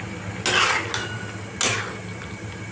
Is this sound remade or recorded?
recorded